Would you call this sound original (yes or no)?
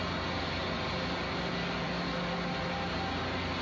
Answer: yes